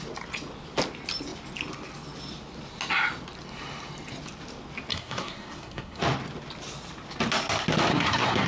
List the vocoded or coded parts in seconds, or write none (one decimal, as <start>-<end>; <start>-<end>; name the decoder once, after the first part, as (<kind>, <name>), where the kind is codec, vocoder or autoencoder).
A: 4.9-6.0 (codec, SNAC); 7.9-8.5